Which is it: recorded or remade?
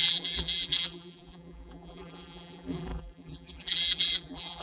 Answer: remade